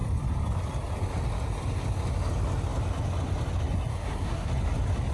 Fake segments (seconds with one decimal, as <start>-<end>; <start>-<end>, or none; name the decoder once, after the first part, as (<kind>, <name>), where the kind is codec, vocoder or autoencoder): 3.9-4.5 (codec, SNAC)